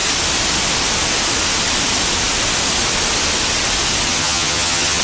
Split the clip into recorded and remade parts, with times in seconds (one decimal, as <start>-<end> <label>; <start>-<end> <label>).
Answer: 0.0-4.1 recorded; 4.1-5.0 remade